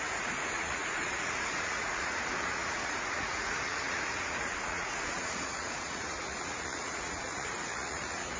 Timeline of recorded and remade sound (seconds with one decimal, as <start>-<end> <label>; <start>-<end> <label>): 0.0-8.4 remade